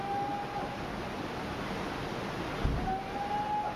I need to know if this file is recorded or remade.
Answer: recorded